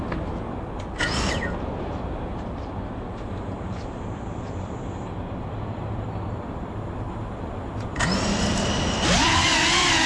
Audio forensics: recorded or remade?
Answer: remade